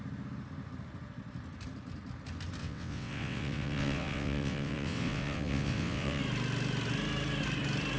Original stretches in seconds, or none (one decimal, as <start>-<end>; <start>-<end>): 0.0-2.6; 6.2-8.0